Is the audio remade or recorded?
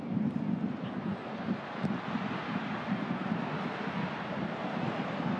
recorded